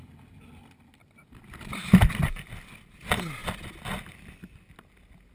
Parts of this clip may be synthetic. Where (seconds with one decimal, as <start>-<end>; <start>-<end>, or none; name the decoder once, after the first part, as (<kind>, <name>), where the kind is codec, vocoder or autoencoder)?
1.0-2.2 (vocoder, BigVGAN v2); 3.4-4.5